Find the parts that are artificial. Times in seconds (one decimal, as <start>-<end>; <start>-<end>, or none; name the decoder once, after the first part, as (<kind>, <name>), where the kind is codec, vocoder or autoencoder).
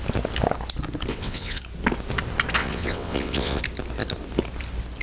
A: 1.1-1.6 (vocoder, WaveNeXt); 2.6-3.6